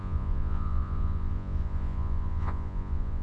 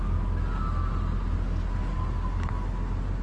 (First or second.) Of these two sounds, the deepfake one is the first